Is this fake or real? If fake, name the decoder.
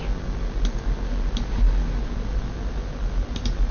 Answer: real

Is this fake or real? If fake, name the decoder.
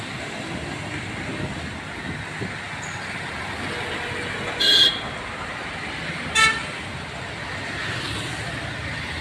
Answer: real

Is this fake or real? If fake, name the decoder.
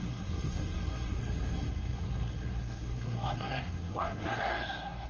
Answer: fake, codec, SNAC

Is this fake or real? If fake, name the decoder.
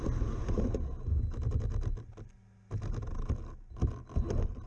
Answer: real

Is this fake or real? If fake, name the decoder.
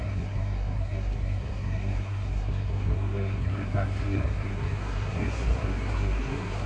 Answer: fake, codec, SNAC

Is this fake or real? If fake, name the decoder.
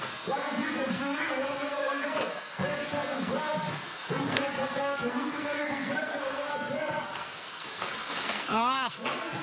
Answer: fake, codec, SNAC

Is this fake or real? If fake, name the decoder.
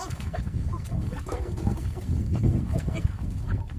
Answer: fake, codec, SNAC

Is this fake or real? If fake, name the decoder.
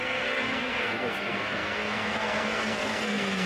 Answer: fake, codec, SNAC